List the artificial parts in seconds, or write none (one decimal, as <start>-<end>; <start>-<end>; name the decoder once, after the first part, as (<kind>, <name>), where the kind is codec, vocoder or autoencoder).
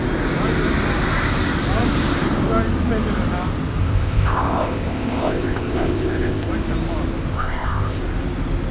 3.8-6.5 (codec, ZipCodec); 7.3-8.0